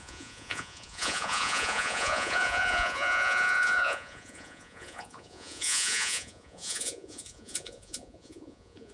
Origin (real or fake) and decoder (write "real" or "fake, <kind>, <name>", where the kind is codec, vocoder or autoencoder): fake, vocoder, Vocos